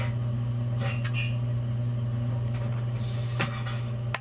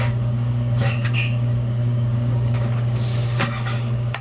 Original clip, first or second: first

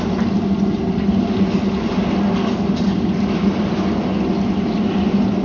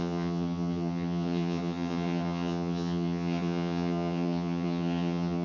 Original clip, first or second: first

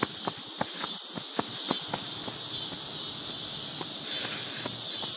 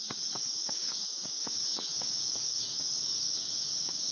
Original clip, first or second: first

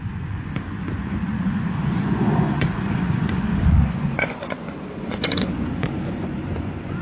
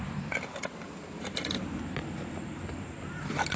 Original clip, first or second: second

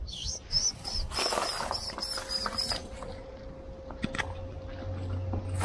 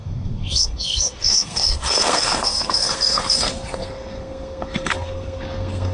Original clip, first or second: first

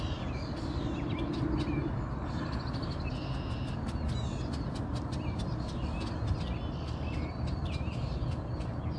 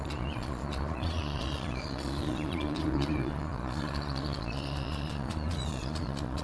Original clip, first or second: first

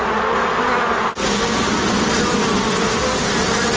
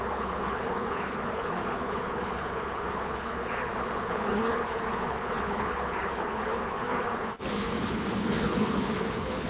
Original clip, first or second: first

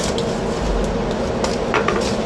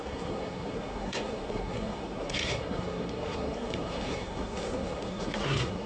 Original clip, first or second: first